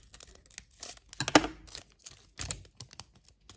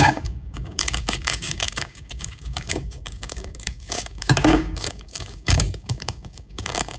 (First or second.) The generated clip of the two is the second